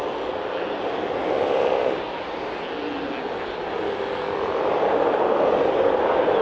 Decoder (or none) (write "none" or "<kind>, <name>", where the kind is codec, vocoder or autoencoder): none